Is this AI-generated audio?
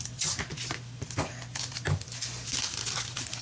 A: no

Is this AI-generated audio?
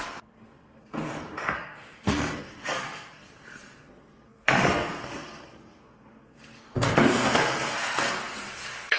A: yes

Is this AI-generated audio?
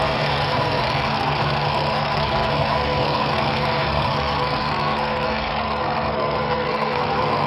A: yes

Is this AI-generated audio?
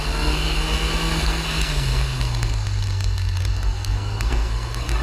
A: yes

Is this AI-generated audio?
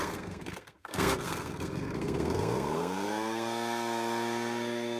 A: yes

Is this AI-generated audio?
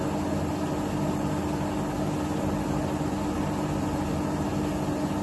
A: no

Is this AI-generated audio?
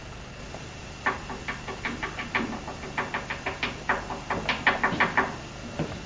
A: no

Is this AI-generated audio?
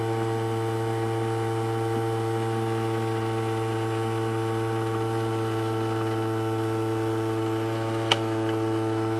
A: no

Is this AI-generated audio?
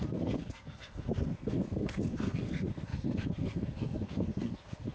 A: yes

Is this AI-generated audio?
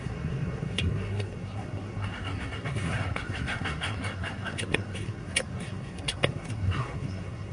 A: yes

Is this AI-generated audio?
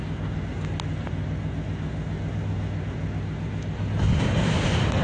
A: no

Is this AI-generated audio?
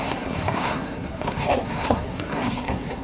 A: yes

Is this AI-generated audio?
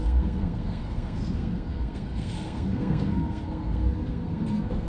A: yes